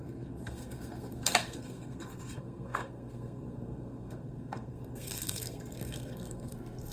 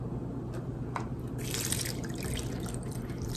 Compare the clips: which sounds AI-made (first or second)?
first